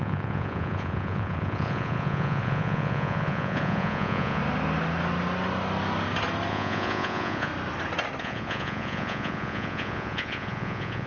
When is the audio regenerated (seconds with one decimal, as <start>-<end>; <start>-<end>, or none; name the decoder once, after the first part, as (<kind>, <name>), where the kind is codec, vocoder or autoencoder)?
0.0-4.4 (vocoder, Vocos); 6.5-7.5; 8.2-11.1